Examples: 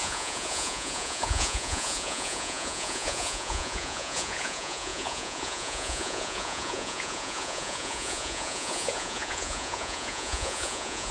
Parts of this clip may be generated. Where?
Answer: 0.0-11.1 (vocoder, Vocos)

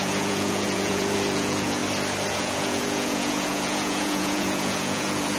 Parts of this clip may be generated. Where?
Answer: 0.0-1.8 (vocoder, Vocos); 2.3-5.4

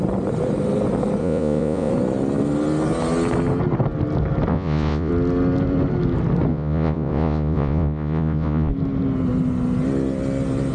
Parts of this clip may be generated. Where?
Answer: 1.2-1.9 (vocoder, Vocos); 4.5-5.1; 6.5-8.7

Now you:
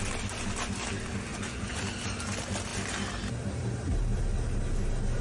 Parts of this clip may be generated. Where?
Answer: 1.3-1.8 (vocoder, Vocos)

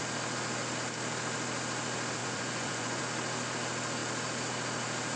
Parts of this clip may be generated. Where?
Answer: 2.2-3.0 (vocoder, Vocos)